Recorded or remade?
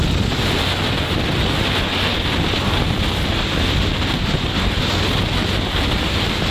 recorded